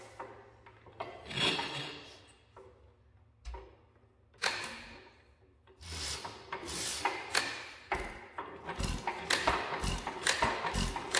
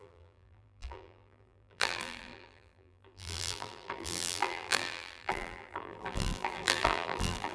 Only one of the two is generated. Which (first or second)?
second